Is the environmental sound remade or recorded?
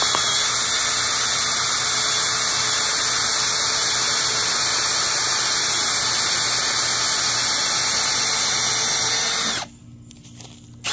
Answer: recorded